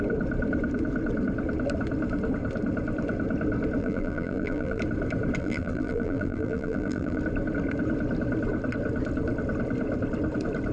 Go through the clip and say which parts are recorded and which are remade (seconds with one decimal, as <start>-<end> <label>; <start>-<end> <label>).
0.0-3.8 recorded; 3.8-4.8 remade; 4.8-5.4 recorded; 5.4-7.2 remade; 7.2-10.7 recorded

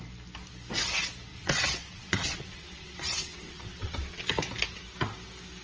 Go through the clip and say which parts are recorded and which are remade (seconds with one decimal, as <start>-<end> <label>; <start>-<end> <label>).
0.0-1.3 recorded; 1.3-4.2 remade; 4.2-5.6 recorded

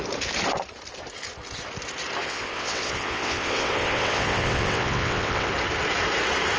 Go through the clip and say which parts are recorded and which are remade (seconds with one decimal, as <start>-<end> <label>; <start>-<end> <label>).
0.0-2.2 recorded; 2.2-5.5 remade; 5.5-6.6 recorded